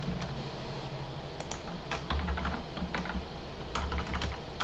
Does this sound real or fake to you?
real